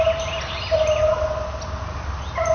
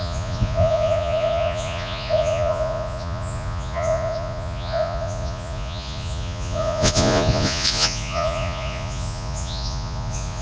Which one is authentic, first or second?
first